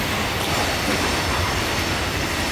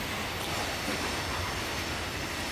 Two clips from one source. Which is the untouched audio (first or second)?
second